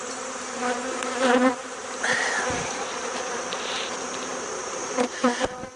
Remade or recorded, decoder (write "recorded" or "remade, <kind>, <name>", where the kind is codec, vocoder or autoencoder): remade, vocoder, BigVGAN v2